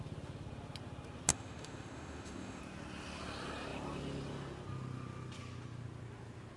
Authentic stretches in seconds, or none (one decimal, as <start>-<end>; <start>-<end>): 0.0-1.3; 2.6-6.6